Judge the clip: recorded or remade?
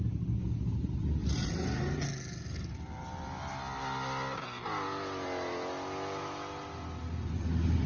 recorded